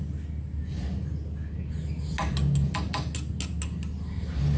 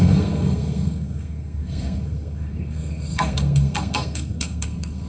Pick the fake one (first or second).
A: second